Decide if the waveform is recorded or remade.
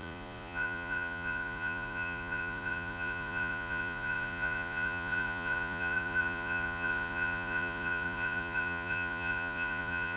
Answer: remade